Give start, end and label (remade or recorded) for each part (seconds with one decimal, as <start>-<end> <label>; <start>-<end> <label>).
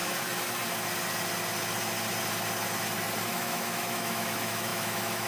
0.0-3.2 recorded; 3.2-5.3 remade